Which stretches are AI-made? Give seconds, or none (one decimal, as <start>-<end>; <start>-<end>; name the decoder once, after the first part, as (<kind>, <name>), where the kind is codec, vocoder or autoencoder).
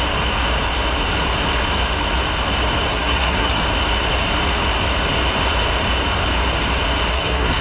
2.9-3.6 (codec, SNAC); 7.1-7.6